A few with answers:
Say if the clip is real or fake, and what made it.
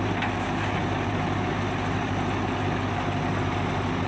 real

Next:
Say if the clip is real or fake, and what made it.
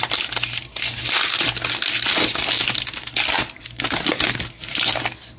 real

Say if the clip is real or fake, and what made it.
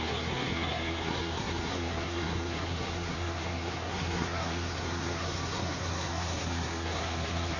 fake, codec, SNAC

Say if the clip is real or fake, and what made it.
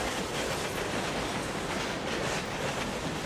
real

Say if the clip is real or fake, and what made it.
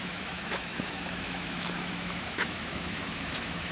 fake, autoencoder, DAC-VAE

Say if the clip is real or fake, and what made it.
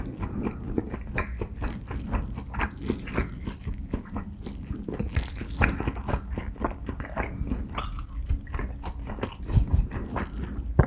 real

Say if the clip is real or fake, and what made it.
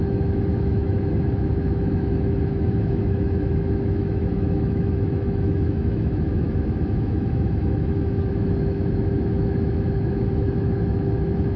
fake, autoencoder, DAC-VAE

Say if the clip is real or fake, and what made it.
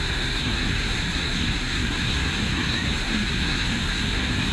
fake, codec, SNAC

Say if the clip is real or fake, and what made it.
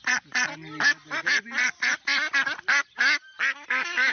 real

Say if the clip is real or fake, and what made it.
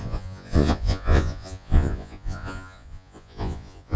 fake, vocoder, Vocos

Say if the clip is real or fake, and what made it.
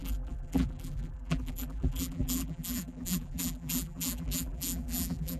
fake, vocoder, BigVGAN v2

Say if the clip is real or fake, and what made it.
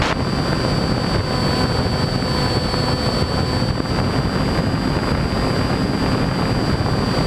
real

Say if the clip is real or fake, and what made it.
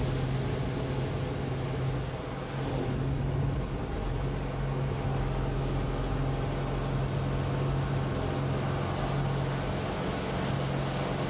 real